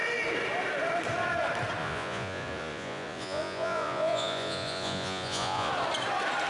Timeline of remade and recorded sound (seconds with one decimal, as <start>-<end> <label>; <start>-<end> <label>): 0.0-1.8 recorded; 1.8-5.7 remade; 5.7-6.5 recorded